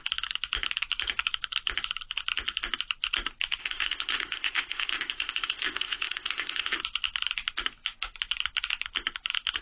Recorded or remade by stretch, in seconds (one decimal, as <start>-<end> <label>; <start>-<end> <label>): 0.0-3.6 recorded; 3.6-6.8 remade; 6.8-9.6 recorded